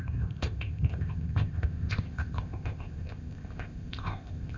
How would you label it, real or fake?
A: fake